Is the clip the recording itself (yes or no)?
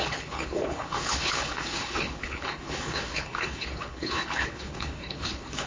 no